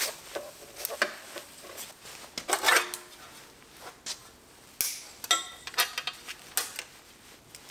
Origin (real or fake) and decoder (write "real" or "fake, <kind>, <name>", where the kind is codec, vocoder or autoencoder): real